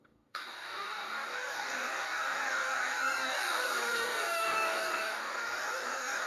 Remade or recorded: remade